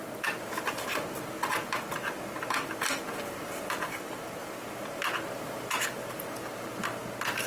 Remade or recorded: recorded